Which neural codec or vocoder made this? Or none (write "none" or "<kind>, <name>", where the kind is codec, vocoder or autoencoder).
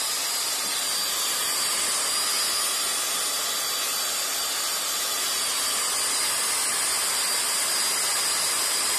none